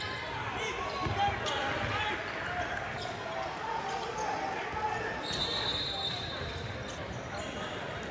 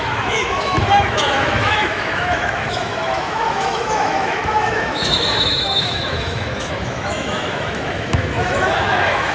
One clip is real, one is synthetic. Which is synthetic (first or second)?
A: second